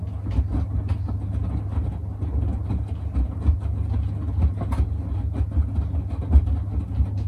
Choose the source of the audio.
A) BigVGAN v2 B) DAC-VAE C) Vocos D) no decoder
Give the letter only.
D